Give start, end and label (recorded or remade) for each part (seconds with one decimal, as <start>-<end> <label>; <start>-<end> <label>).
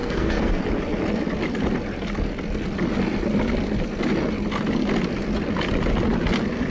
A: 0.0-0.6 remade; 0.6-6.7 recorded